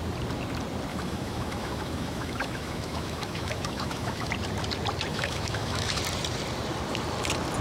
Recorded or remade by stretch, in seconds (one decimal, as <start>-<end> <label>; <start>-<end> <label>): 0.0-0.9 recorded; 0.9-4.3 remade; 4.3-5.1 recorded; 5.1-6.0 remade; 6.0-7.6 recorded